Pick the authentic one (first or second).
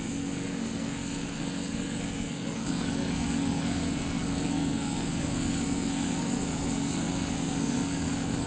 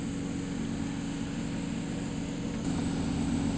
second